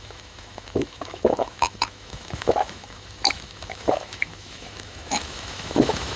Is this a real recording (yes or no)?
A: no